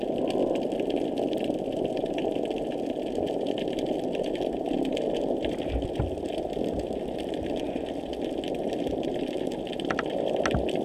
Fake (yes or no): no